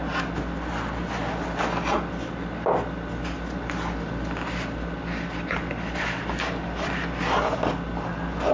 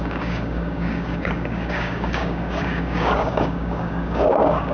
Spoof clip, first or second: second